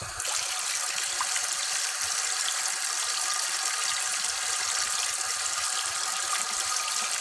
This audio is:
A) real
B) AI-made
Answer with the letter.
A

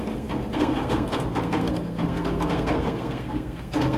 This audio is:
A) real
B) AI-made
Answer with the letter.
B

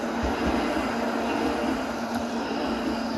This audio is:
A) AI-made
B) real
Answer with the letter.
B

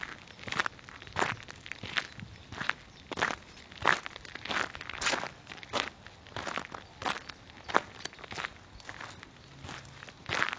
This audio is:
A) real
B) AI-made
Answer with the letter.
A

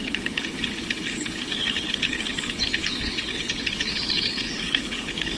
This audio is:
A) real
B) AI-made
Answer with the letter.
B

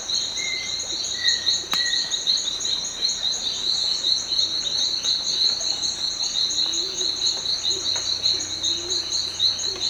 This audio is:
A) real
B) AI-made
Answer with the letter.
A